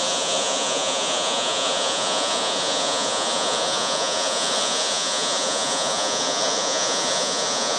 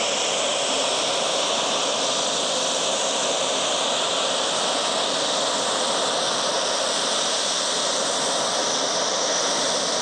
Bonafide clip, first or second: second